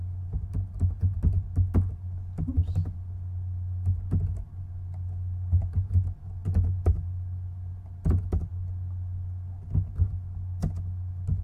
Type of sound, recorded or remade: recorded